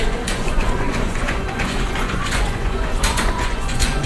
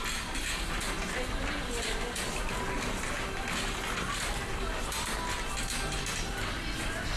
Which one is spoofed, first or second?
first